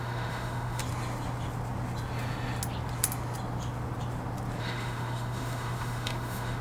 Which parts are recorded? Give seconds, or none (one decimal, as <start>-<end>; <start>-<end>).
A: 0.8-4.6